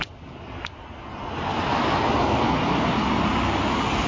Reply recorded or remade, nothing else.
recorded